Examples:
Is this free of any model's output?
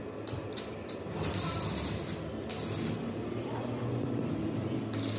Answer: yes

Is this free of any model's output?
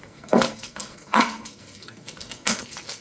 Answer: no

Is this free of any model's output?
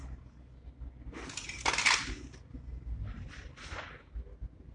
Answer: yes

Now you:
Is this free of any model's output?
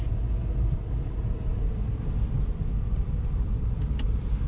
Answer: yes